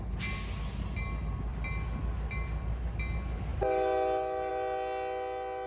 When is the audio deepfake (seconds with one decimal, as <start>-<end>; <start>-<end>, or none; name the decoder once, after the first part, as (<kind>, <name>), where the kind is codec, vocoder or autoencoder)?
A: none